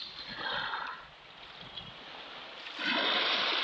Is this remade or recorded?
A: remade